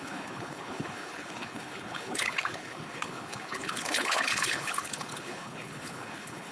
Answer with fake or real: fake